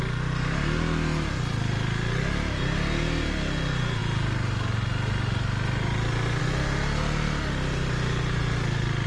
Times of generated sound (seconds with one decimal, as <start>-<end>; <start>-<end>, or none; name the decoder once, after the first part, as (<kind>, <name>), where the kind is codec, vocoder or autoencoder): none